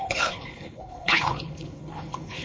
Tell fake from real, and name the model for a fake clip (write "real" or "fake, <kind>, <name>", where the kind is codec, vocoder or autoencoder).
fake, codec, HILCodec